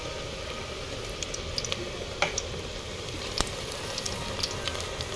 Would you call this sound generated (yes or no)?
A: no